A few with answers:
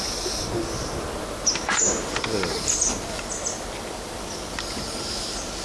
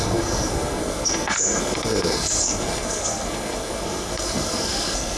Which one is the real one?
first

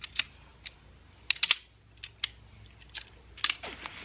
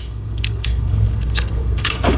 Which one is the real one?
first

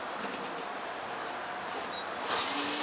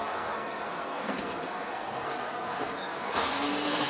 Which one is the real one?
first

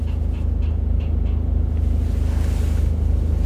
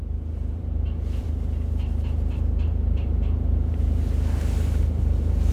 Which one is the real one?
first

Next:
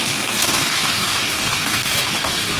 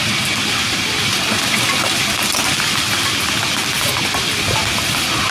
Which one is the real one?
second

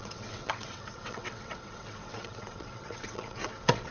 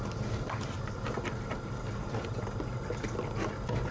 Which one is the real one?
second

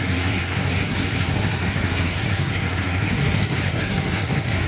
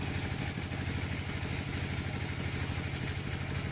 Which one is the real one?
second